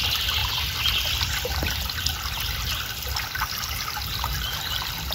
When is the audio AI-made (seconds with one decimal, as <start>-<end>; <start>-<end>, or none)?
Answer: none